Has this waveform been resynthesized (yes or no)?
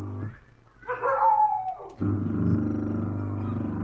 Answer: no